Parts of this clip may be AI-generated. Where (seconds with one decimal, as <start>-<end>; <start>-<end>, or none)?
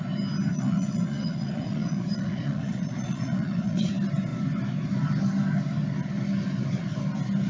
0.5-3.9